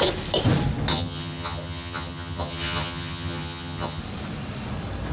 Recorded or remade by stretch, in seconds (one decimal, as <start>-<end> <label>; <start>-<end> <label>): 0.0-0.9 recorded; 0.9-4.0 remade; 4.0-5.1 recorded